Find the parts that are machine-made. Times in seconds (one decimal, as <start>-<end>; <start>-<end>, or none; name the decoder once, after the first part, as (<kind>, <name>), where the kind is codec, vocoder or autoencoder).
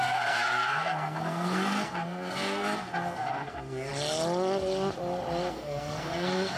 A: 0.0-3.9 (codec, SNAC); 5.5-6.6